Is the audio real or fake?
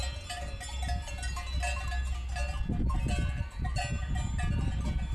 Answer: real